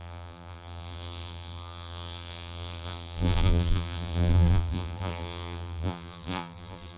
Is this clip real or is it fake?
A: fake